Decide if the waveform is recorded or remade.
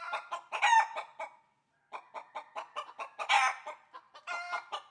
recorded